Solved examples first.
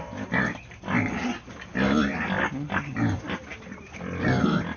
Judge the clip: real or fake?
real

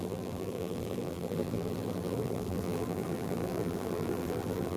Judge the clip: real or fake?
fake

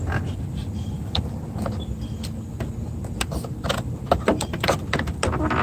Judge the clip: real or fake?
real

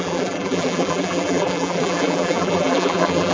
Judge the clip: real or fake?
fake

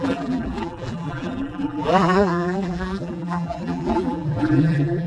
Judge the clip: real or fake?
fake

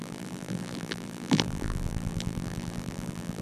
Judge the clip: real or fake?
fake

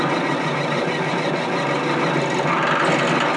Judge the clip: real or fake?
real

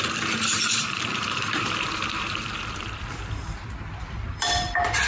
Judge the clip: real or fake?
fake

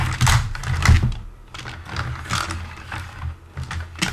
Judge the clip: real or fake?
real